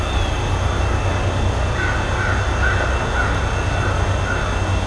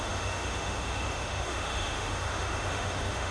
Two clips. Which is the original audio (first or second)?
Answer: first